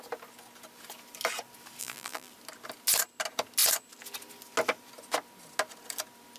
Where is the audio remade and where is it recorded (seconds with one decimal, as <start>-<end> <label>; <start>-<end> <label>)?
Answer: 0.0-1.8 recorded; 1.8-2.3 remade; 2.3-6.4 recorded